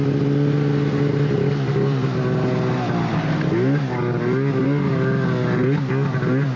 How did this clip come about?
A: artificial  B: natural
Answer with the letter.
B